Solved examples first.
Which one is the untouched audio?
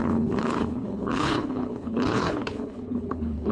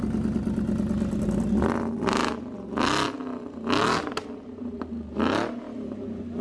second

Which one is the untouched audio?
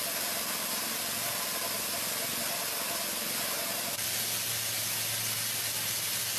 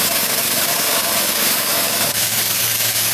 first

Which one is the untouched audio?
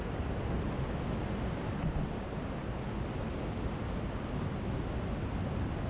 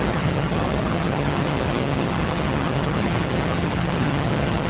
first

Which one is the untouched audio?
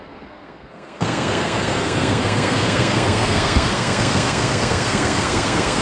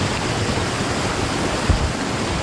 second